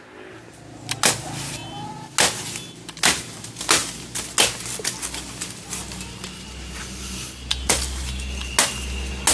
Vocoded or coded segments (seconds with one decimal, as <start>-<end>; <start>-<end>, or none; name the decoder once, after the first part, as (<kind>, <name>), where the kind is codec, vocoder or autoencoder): none